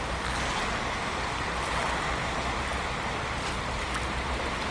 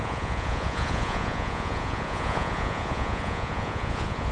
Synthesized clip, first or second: second